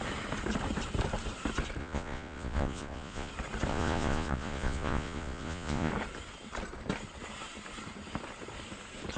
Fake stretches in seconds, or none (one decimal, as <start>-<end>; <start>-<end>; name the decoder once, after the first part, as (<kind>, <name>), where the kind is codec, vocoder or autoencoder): 1.8-3.3 (vocoder, Vocos); 3.7-5.9